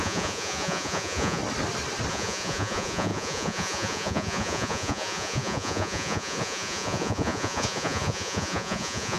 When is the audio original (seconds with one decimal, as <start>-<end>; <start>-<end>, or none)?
1.4-2.1